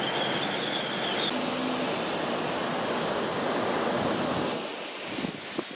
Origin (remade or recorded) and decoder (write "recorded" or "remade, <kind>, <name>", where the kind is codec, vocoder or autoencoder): recorded